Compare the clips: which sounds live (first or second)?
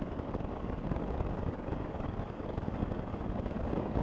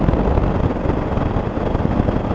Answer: second